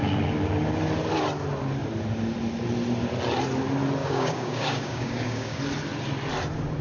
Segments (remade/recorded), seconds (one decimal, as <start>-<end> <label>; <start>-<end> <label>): 0.0-4.0 recorded; 4.0-5.6 remade; 5.6-6.8 recorded